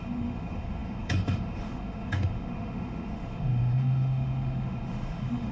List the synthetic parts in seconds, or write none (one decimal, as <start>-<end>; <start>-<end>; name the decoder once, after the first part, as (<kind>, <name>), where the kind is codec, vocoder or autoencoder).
0.0-5.5 (autoencoder, DAC-VAE)